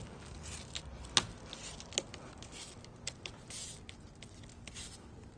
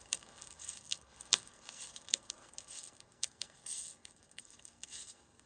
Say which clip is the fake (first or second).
second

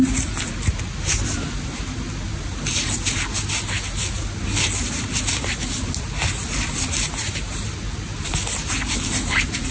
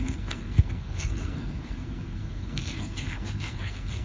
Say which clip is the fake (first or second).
second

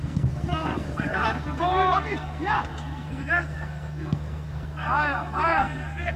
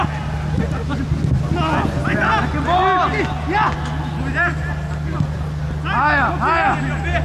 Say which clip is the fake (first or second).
first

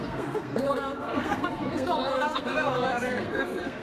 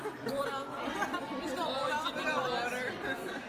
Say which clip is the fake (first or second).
first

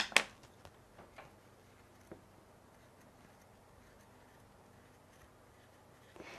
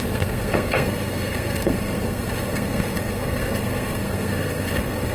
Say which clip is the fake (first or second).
second